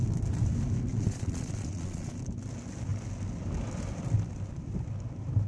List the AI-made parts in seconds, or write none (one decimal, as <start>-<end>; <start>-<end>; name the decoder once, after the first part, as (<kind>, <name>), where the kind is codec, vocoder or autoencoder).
0.9-2.1 (vocoder, Vocos)

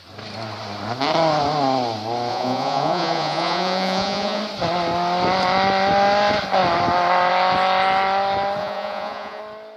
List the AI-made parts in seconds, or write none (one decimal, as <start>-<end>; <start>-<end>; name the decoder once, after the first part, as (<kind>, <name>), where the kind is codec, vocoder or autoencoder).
2.3-4.4 (vocoder, Vocos); 8.6-9.4

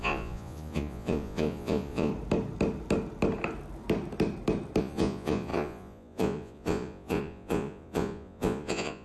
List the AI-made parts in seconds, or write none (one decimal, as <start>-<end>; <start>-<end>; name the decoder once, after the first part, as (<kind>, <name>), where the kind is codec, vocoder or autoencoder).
0.0-2.1 (vocoder, Vocos); 4.8-9.0